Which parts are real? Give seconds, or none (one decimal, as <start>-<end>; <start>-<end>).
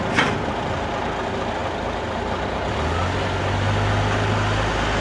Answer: 0.0-5.0